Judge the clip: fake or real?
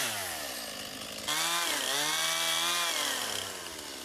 real